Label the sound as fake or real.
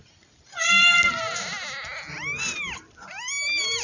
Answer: real